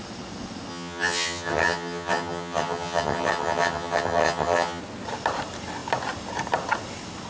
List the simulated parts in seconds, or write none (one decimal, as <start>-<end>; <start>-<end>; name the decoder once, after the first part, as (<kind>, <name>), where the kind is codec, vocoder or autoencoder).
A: 0.7-4.8 (vocoder, HiFi-GAN)